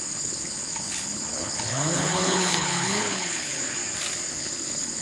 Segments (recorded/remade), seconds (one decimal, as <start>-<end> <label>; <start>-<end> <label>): 0.0-3.8 remade; 3.8-4.3 recorded; 4.3-5.0 remade